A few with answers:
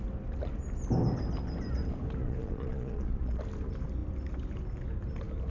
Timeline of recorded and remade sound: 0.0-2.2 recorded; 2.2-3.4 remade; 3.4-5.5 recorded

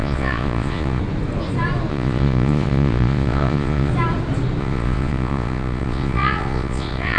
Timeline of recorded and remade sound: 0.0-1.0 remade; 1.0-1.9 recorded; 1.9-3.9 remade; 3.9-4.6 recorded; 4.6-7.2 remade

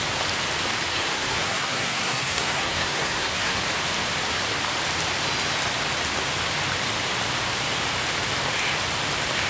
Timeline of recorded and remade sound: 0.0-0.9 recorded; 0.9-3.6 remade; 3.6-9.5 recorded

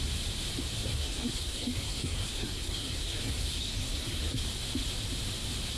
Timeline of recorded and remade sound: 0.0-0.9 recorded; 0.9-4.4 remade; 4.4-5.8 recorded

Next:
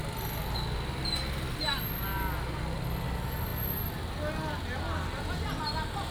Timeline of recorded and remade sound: 0.0-6.1 recorded

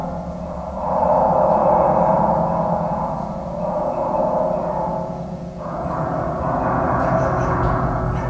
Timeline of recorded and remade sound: 0.0-8.3 remade

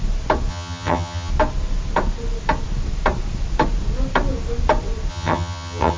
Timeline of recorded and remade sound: 0.0-0.5 recorded; 0.5-1.3 remade; 1.3-5.1 recorded; 5.1-6.0 remade

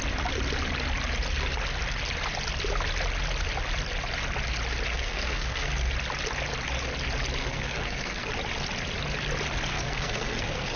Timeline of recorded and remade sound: 0.0-4.9 recorded; 4.9-5.9 remade; 5.9-7.4 recorded; 7.4-8.3 remade; 8.3-9.7 recorded; 9.7-10.8 remade